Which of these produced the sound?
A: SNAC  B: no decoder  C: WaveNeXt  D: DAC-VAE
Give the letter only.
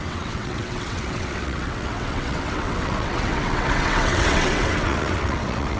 C